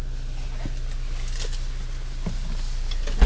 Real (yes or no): yes